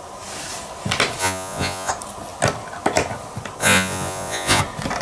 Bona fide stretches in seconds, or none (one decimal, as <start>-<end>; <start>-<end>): 0.0-1.2; 1.9-3.6; 4.6-5.0